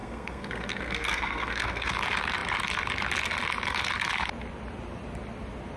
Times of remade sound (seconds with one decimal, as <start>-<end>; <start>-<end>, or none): 0.0-1.9